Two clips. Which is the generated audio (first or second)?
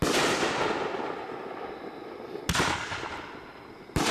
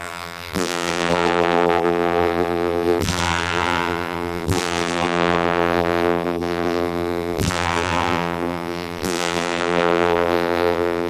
second